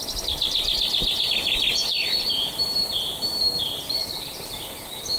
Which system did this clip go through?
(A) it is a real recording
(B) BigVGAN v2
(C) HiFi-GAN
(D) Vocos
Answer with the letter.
A